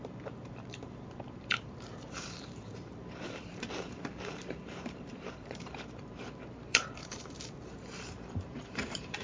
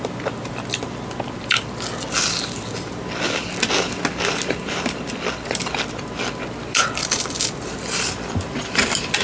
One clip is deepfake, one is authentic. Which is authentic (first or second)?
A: second